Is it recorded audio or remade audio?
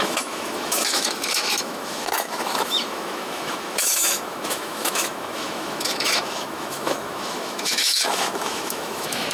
remade